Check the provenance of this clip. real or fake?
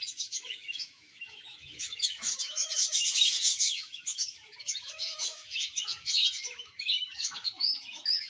fake